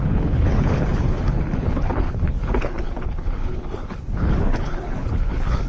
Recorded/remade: remade